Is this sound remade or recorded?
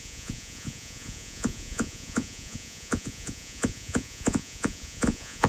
remade